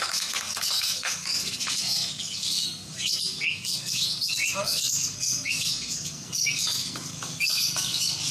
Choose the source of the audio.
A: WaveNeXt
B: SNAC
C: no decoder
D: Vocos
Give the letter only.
B